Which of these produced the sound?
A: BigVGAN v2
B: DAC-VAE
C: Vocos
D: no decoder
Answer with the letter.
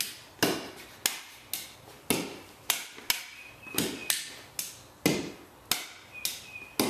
D